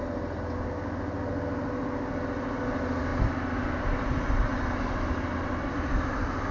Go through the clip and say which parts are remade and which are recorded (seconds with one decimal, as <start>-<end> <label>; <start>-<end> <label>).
0.0-6.5 recorded